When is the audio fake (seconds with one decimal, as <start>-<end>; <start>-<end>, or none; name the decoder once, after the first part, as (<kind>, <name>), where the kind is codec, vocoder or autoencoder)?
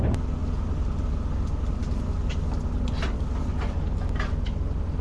none